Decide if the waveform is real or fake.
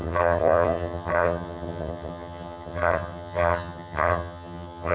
fake